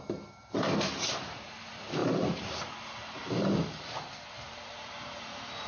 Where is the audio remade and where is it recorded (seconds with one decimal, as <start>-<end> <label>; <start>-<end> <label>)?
0.0-5.7 remade